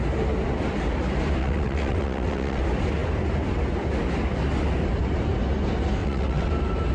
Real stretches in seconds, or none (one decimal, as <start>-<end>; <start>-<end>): 0.0-1.4; 2.6-6.0; 6.5-6.9